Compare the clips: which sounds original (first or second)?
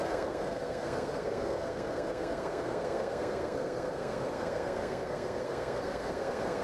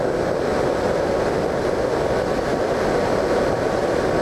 second